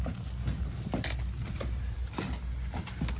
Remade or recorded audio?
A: recorded